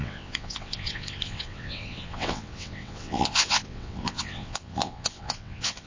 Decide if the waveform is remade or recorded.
remade